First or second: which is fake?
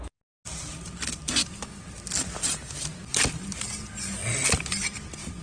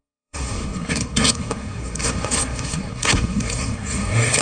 second